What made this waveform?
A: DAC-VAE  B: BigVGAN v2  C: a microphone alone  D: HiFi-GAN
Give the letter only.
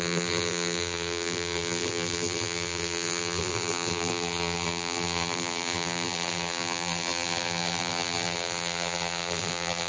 B